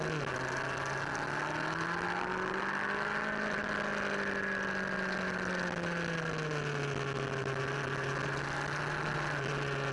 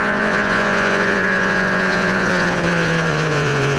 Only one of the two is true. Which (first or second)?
first